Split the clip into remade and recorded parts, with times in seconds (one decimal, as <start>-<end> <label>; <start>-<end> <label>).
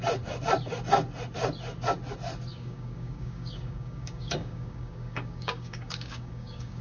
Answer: 0.0-2.5 recorded; 2.5-6.8 remade